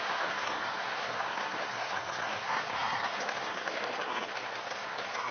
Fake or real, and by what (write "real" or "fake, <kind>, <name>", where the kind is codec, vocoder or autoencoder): fake, codec, SNAC